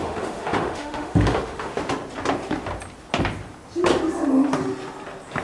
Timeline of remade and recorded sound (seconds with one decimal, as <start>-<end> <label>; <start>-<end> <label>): 0.0-1.8 remade; 1.8-5.4 recorded